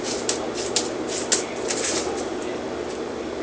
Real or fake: real